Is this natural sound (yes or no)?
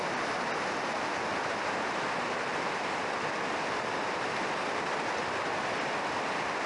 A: yes